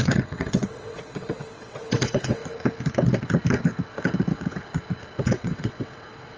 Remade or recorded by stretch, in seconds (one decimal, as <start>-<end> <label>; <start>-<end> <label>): 0.0-2.4 remade; 2.4-4.3 recorded; 4.3-4.7 remade; 4.7-5.2 recorded; 5.2-6.4 remade